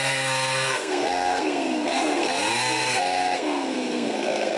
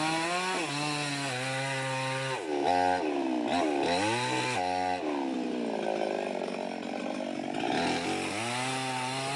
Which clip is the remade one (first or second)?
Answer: first